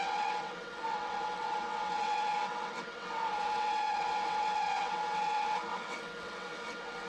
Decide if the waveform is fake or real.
fake